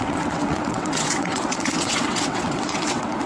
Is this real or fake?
fake